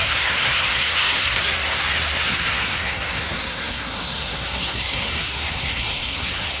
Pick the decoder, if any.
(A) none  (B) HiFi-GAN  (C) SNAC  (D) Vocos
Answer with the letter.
C